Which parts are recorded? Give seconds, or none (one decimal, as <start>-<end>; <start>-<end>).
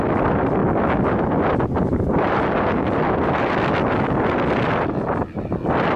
0.0-6.0